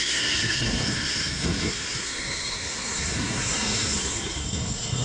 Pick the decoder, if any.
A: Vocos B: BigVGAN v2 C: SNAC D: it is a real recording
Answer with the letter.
C